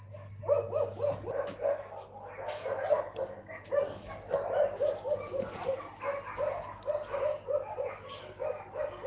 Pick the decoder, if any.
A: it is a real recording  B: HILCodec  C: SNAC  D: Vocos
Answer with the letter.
A